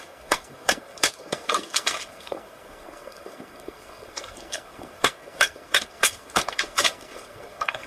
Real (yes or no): no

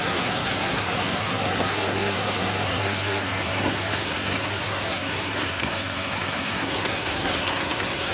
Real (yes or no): no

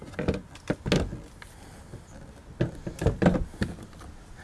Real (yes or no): yes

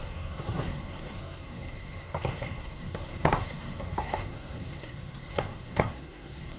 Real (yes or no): no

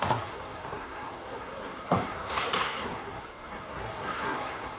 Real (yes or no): no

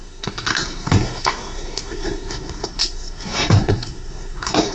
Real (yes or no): no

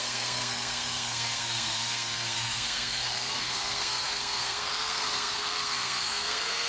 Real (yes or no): no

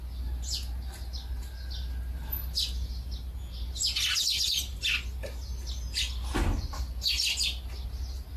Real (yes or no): yes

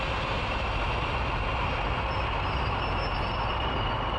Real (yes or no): yes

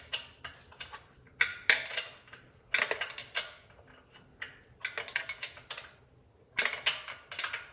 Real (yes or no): yes